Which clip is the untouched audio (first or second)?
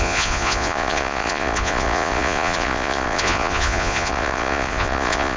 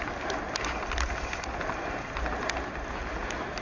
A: second